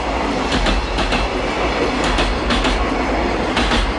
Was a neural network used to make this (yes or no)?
no